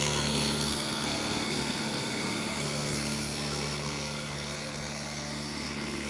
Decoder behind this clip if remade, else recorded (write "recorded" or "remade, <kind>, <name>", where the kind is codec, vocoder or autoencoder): remade, codec, SNAC